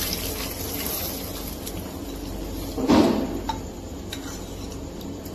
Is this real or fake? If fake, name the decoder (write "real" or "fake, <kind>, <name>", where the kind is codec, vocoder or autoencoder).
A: real